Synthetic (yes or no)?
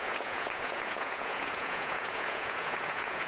yes